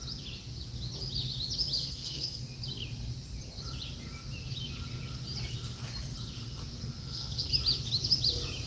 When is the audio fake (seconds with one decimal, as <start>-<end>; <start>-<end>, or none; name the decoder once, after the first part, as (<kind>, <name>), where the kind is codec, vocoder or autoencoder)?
1.8-2.4 (codec, SNAC); 6.4-7.5